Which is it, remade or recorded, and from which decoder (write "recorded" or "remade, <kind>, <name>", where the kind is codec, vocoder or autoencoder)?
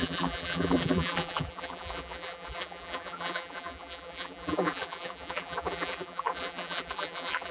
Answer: remade, vocoder, BigVGAN v2